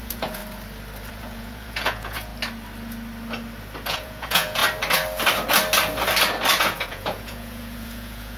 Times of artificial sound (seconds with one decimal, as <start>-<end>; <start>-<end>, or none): 0.0-0.4; 1.1-2.3; 3.9-4.6; 6.6-8.4